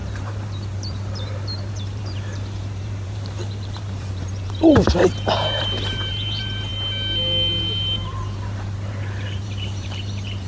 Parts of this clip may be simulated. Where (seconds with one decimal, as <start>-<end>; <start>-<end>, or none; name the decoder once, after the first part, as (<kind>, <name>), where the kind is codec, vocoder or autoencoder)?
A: 0.0-6.7 (vocoder, BigVGAN v2); 7.6-10.5